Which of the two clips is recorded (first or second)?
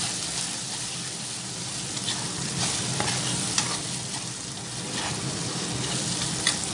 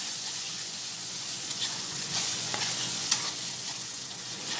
first